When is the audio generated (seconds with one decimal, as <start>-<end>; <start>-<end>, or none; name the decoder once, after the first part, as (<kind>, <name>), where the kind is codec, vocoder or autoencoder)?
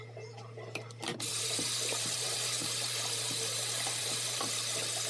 1.3-4.4 (vocoder, BigVGAN v2)